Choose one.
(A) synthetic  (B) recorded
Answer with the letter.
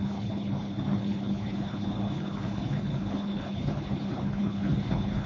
A